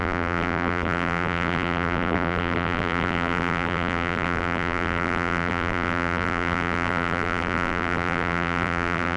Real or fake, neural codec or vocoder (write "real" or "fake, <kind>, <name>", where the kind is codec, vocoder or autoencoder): fake, vocoder, BigVGAN v2